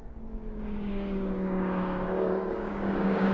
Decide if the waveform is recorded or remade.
remade